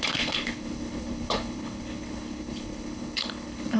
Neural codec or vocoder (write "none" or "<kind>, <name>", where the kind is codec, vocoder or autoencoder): codec, HILCodec